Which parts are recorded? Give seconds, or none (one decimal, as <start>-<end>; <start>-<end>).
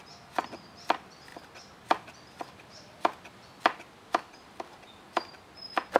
0.0-6.0